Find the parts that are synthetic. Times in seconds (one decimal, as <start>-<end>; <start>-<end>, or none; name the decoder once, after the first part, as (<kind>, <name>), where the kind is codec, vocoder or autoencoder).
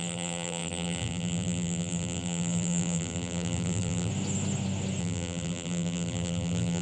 0.0-4.1 (vocoder, BigVGAN v2); 5.0-6.8